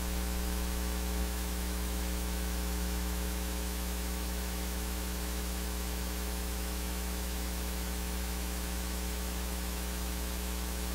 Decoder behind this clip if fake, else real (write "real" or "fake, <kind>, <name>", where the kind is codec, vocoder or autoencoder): fake, autoencoder, DAC-VAE